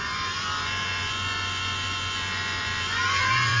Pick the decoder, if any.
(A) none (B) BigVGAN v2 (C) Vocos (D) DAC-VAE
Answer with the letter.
C